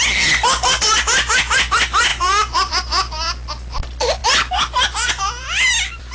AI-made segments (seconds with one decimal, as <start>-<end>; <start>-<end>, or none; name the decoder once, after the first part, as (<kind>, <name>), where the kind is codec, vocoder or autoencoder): none